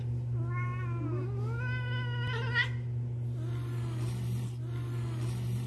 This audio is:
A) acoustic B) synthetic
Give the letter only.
A